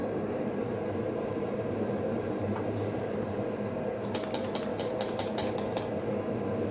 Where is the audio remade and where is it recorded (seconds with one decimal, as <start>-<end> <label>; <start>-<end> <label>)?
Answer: 0.0-3.3 remade; 3.3-4.7 recorded; 4.7-5.8 remade; 5.8-6.7 recorded